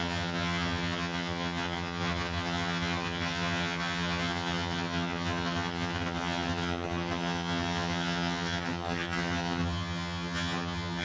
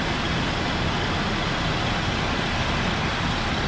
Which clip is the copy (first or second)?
first